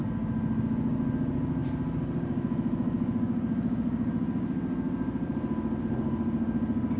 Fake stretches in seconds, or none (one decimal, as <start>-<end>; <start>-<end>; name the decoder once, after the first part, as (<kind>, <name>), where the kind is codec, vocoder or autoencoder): none